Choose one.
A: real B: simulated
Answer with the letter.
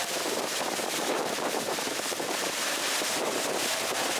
B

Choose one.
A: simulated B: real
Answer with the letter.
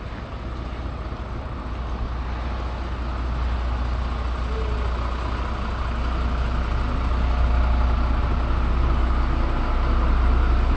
B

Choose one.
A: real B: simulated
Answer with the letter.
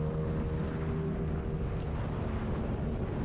A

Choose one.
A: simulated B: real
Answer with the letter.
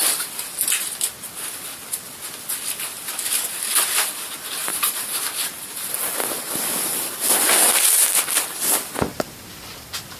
B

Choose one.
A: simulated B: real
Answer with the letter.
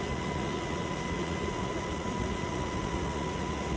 A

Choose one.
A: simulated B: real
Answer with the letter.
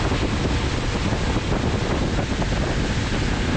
B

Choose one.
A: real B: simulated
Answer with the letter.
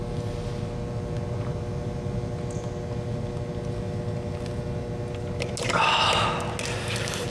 A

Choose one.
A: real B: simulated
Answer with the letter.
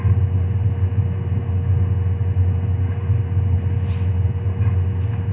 A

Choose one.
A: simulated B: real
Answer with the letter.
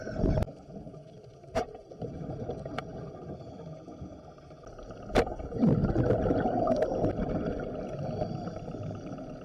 B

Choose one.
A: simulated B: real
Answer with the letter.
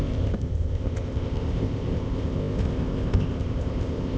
A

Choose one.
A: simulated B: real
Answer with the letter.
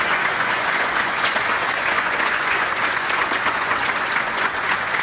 A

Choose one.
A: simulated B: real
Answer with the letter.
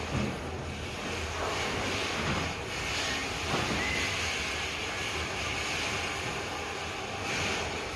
B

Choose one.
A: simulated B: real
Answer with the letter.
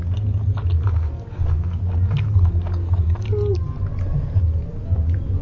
B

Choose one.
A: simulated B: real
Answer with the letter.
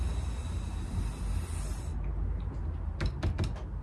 B